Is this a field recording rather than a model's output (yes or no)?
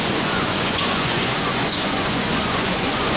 no